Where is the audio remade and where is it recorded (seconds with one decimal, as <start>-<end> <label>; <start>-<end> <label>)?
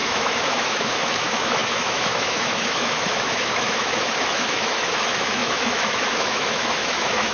0.0-7.3 remade